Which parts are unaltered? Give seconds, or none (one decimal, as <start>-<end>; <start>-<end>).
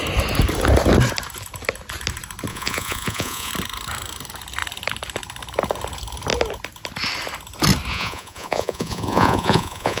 0.0-2.5; 3.5-7.9